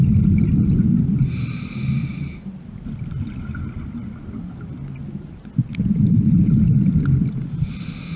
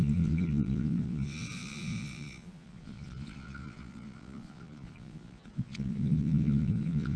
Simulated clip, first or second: second